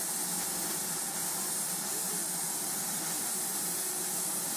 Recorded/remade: recorded